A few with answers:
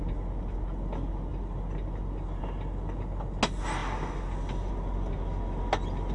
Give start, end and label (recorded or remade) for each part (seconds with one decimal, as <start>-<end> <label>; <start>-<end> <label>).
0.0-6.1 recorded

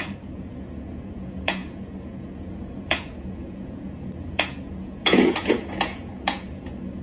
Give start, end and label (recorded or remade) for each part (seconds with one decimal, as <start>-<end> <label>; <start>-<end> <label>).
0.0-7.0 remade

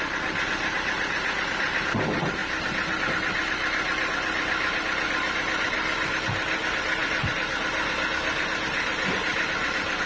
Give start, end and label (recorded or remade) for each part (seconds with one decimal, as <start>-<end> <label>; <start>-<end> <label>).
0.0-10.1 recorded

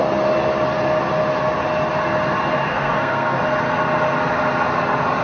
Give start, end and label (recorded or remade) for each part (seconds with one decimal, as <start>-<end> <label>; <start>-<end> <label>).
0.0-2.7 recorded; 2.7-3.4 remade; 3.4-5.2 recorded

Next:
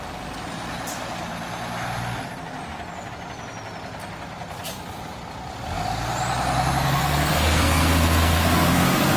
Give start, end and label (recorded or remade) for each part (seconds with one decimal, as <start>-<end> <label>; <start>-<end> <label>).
0.0-7.0 recorded; 7.0-9.2 remade